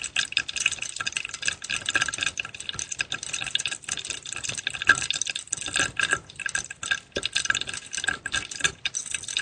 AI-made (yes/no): no